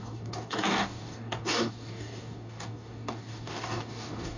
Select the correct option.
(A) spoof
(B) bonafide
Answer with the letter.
A